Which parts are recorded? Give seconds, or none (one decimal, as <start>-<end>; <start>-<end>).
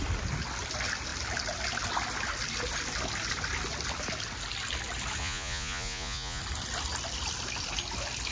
0.0-5.2; 6.4-8.3